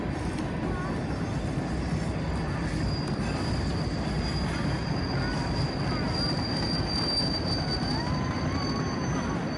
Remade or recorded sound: recorded